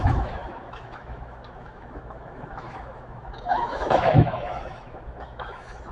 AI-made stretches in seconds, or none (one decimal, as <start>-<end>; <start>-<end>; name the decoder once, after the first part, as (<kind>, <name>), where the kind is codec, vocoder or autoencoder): 0.0-5.9 (autoencoder, DAC-VAE)